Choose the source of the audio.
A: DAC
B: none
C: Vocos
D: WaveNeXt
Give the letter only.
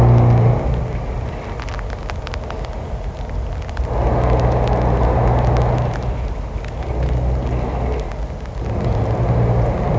B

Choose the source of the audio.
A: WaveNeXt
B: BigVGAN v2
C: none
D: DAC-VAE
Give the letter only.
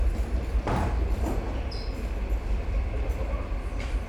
C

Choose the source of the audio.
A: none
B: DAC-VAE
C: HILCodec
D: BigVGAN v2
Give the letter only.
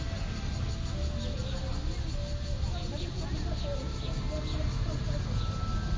A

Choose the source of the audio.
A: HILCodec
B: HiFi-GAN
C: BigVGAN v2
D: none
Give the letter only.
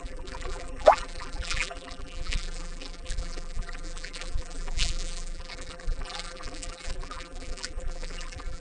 C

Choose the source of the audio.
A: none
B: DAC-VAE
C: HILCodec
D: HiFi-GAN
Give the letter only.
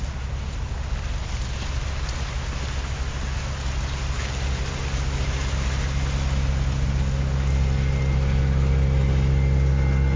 A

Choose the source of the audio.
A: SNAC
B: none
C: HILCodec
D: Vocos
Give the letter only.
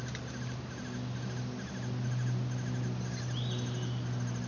B